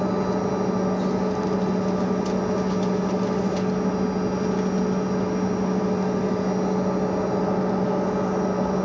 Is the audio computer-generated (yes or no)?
no